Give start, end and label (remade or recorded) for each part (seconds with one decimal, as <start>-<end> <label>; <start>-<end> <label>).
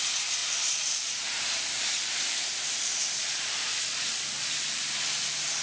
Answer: 0.0-5.6 remade